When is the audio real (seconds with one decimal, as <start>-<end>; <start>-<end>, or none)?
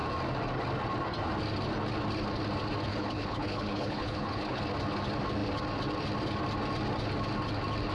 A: 0.0-2.9; 4.6-7.9